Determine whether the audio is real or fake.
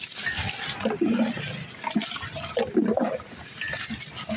real